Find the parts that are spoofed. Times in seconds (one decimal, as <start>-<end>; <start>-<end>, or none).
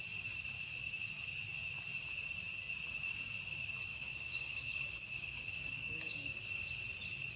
3.9-6.6